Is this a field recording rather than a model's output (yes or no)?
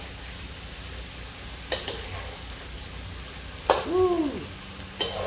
yes